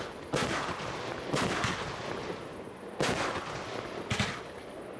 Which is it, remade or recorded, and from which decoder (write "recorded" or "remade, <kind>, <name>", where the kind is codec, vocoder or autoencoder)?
recorded